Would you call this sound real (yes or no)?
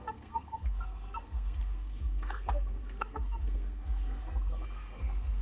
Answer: no